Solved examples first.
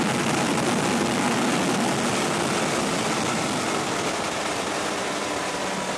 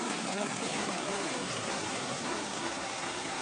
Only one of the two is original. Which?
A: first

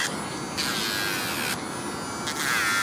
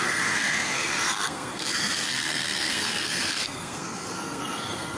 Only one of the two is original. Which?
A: first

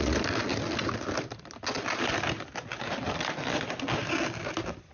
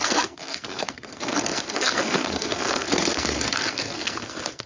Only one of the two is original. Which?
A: first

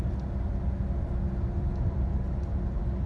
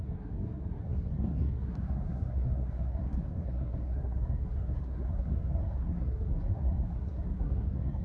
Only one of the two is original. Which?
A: first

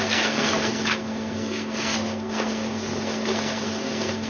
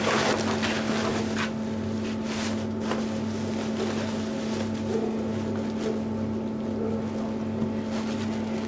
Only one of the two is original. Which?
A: second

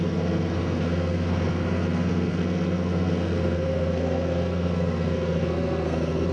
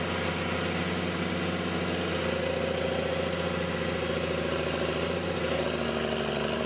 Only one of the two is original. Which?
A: second